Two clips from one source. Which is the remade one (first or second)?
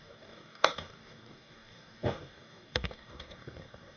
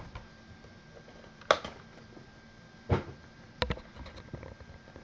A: first